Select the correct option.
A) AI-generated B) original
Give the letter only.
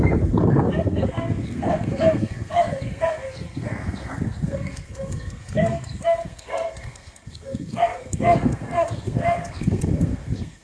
A